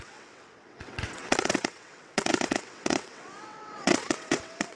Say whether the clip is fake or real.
fake